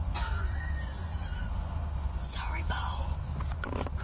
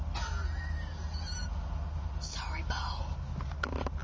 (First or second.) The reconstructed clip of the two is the first